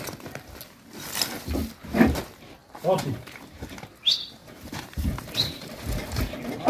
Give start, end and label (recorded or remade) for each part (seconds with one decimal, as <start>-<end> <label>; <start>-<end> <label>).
0.0-2.6 recorded; 2.6-3.8 remade; 3.8-4.4 recorded; 4.4-6.2 remade; 6.2-6.7 recorded